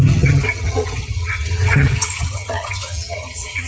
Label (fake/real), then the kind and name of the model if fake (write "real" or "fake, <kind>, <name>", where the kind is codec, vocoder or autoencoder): fake, vocoder, HiFi-GAN